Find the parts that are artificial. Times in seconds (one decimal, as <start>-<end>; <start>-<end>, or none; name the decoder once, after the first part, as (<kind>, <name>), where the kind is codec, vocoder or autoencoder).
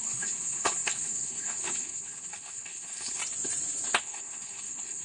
0.0-3.2 (codec, HILCodec); 4.0-5.0